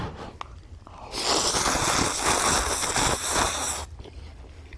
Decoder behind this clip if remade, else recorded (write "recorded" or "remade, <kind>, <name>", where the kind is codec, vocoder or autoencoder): recorded